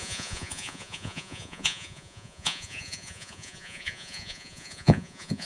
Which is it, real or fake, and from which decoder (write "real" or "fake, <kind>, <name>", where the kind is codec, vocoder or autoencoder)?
fake, vocoder, Vocos